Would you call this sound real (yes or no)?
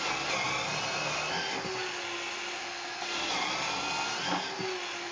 yes